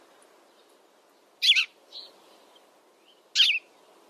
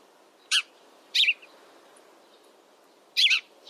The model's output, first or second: second